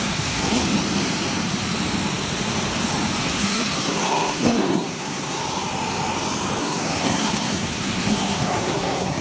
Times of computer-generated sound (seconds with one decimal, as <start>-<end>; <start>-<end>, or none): 0.0-0.6; 3.2-5.4; 6.6-9.2